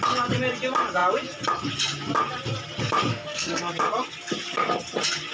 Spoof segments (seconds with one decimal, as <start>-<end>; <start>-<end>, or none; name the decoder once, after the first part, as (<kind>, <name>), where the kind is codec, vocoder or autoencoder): 3.1-3.7 (codec, SNAC)